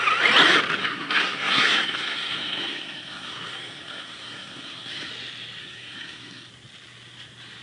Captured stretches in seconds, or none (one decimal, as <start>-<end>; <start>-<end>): 0.0-0.8; 5.1-5.6; 6.5-7.6